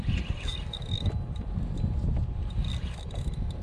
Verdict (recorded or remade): recorded